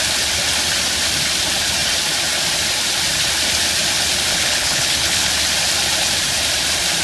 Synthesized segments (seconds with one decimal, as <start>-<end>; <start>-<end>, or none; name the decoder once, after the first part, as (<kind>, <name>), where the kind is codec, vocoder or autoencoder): 4.3-5.3 (codec, HILCodec)